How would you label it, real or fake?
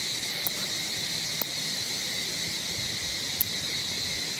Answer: real